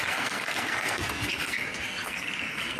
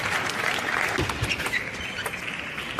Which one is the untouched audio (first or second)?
second